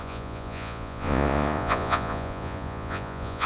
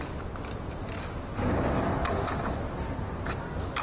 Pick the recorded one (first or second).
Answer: second